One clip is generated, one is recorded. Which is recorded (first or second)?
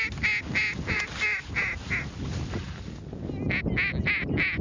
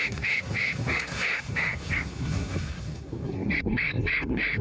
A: first